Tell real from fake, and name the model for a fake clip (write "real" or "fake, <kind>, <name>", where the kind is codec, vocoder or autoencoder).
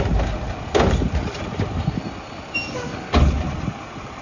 real